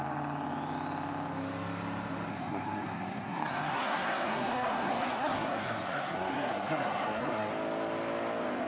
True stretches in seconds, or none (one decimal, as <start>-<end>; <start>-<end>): 0.0-2.3; 7.5-8.7